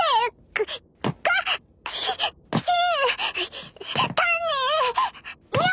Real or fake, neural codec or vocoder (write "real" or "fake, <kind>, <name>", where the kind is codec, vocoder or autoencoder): real